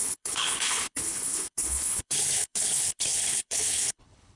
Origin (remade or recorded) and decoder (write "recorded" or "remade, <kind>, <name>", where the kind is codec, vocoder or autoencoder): remade, codec, HILCodec